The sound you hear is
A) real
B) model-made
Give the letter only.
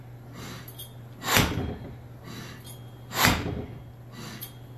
A